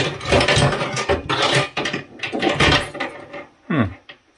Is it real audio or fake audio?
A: real